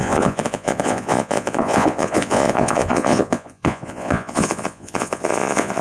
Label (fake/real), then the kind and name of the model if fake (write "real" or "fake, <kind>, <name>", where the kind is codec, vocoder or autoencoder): fake, vocoder, Vocos